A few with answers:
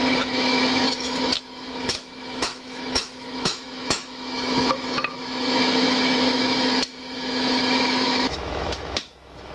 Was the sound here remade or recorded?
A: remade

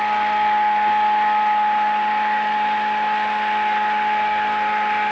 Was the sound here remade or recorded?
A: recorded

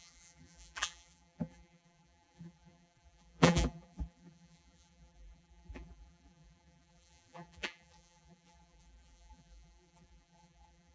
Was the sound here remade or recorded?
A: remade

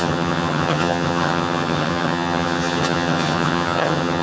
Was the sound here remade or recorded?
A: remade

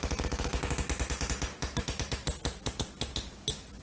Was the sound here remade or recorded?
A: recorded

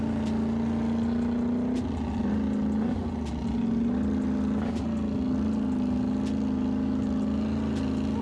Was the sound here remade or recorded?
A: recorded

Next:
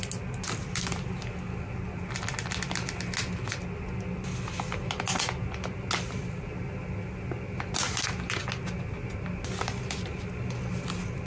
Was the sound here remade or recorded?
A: recorded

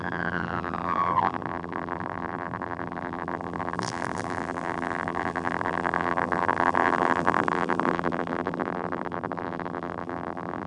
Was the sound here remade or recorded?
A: remade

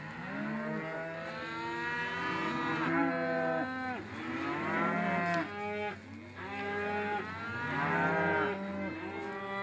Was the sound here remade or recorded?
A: recorded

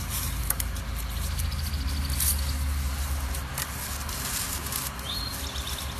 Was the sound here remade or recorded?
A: recorded